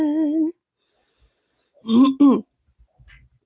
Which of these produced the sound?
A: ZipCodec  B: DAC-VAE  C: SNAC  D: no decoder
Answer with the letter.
D